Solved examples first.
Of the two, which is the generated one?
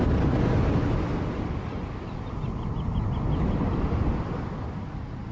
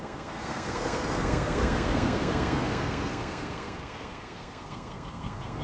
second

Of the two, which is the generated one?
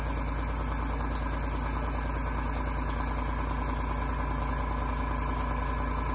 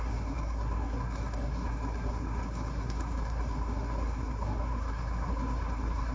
second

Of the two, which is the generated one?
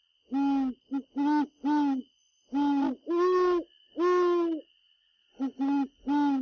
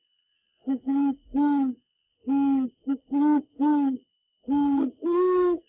second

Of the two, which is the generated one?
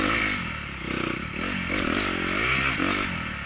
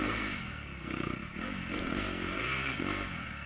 second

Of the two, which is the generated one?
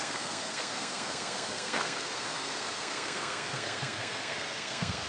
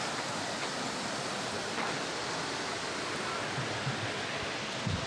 first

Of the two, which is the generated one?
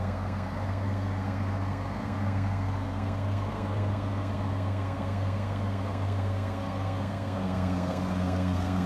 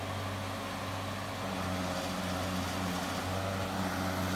first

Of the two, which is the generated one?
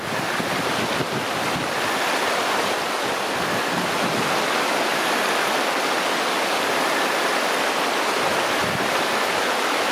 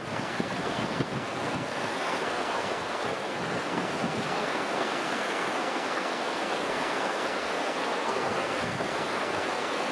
second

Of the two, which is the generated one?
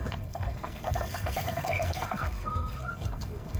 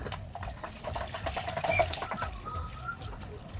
first